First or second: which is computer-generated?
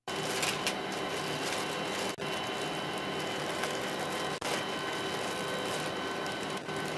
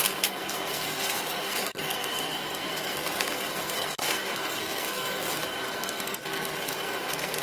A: second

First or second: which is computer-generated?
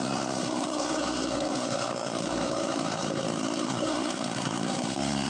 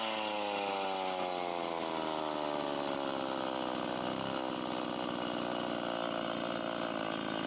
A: first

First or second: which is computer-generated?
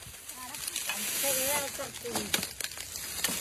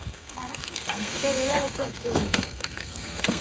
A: second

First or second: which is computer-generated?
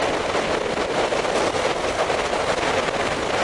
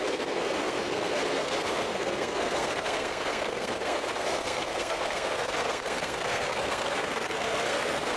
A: second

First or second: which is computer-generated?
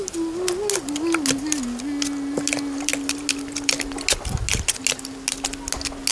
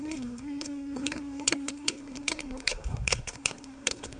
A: second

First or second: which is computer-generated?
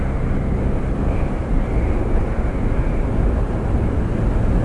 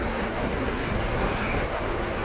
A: second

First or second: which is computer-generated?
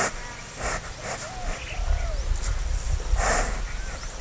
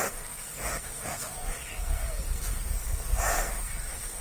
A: second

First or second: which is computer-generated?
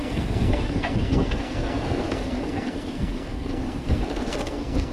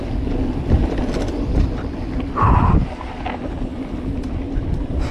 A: first